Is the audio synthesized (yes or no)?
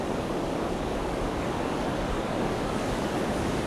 yes